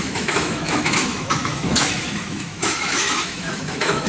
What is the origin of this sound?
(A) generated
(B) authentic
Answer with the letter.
A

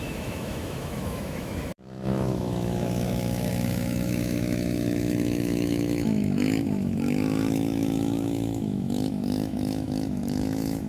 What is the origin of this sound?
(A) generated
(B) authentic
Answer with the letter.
A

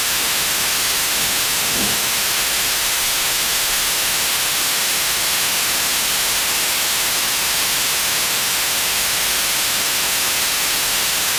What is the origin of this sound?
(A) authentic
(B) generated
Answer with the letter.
B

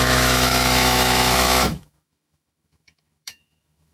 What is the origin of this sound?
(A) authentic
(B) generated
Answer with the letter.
B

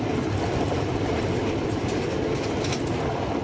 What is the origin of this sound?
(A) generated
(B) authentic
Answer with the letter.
B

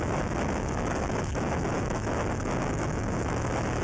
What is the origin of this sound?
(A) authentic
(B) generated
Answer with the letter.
B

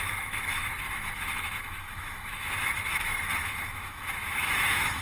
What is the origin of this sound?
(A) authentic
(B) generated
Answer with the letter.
B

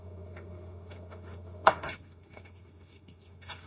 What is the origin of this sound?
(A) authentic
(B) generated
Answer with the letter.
B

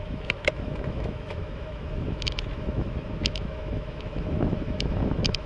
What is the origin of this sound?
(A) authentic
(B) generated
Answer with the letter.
B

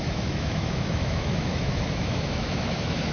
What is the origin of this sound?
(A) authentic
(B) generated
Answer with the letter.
B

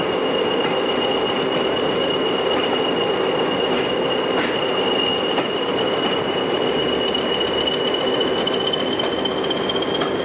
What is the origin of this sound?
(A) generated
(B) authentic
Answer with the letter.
B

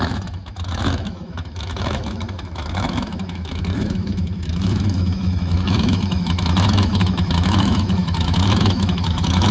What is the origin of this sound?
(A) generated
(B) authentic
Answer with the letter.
A